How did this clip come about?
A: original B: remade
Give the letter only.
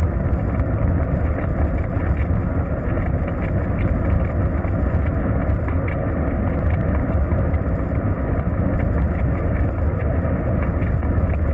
A